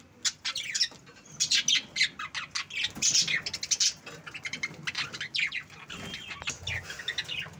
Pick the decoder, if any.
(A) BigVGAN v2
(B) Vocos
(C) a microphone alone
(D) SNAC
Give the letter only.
C